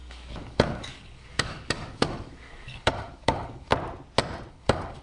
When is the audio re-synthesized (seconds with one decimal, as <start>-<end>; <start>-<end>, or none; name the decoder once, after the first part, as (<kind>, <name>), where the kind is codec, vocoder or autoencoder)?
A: 0.0-3.7 (codec, DAC); 4.5-5.0